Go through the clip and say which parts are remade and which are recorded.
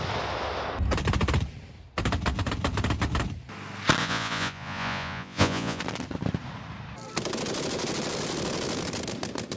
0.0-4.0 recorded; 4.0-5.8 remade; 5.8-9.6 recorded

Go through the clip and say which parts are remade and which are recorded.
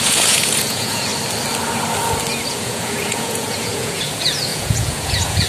0.0-1.1 remade; 1.1-2.5 recorded; 2.5-5.5 remade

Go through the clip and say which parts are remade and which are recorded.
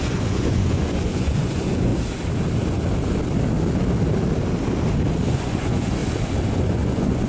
0.0-1.9 remade; 1.9-5.3 recorded; 5.3-6.0 remade; 6.0-6.5 recorded; 6.5-7.3 remade